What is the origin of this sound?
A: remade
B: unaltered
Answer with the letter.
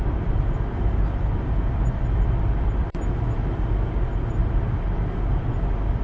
B